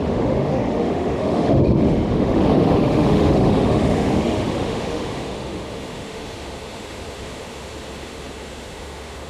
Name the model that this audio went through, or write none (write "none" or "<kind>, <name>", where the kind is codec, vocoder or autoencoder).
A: autoencoder, DAC-VAE